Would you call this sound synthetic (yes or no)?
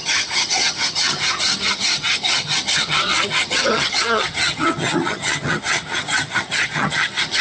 yes